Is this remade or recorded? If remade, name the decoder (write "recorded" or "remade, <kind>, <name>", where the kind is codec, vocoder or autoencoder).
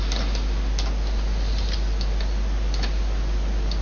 recorded